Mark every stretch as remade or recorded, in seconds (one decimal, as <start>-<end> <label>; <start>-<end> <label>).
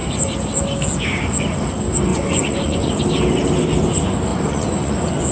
0.0-2.1 recorded; 2.1-2.9 remade; 2.9-4.3 recorded; 4.3-5.3 remade